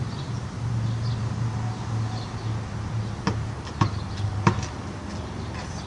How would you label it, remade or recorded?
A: recorded